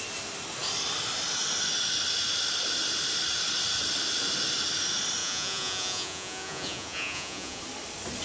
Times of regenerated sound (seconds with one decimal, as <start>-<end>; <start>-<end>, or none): 5.2-7.6